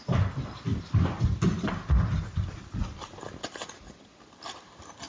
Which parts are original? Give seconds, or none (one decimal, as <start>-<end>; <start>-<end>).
0.0-5.1